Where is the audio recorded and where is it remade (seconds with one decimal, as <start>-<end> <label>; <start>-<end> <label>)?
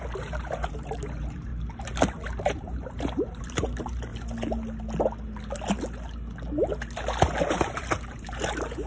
0.0-1.5 remade; 1.5-2.4 recorded; 2.4-4.1 remade; 4.1-7.5 recorded; 7.5-8.9 remade